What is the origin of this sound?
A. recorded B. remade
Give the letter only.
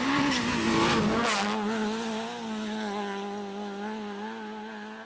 A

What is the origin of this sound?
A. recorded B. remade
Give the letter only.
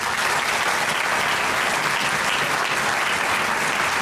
A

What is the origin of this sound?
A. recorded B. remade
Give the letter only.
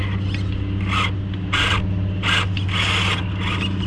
A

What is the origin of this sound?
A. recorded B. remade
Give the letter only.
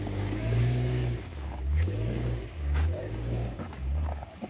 B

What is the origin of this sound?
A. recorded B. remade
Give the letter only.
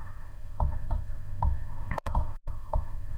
B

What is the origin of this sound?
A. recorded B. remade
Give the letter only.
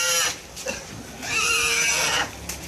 A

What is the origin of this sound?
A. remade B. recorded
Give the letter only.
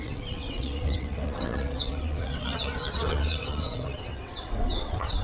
A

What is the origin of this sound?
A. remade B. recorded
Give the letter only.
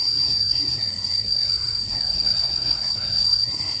A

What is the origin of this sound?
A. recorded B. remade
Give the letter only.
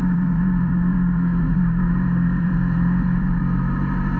B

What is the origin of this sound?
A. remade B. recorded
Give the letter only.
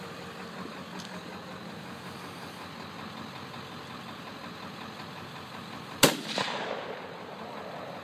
B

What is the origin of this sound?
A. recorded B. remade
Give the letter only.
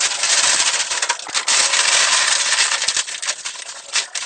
A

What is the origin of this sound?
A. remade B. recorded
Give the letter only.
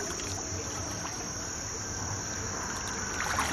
B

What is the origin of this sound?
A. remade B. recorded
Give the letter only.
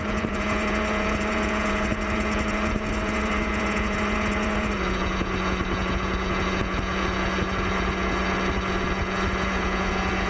A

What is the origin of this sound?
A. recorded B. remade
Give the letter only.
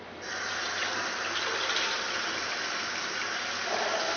B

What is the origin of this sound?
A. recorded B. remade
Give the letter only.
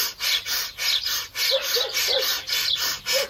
A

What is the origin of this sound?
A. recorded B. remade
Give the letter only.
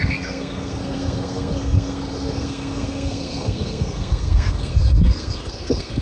B